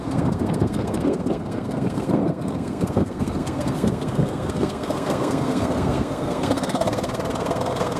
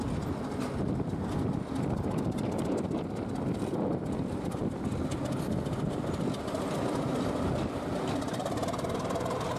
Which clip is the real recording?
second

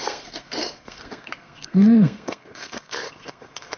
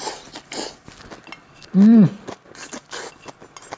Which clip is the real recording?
second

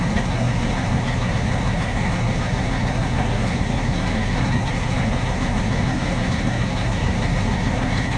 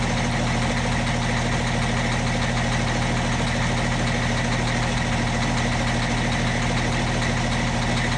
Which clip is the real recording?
second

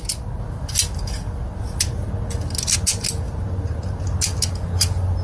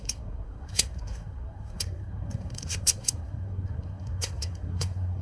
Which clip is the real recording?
first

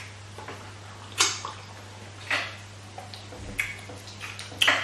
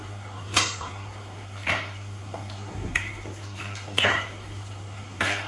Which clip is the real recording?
first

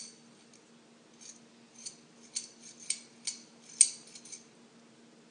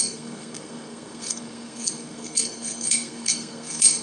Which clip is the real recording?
first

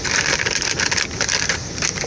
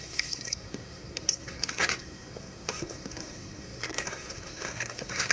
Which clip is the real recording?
first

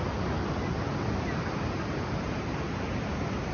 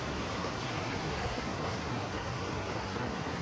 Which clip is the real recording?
first